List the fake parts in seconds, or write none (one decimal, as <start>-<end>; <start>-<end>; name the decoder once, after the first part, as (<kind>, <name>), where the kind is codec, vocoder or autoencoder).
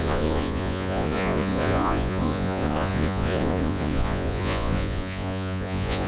0.0-6.1 (vocoder, Vocos)